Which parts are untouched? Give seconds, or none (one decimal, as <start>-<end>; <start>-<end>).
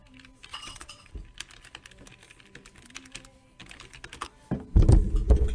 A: 0.0-0.5; 1.1-5.5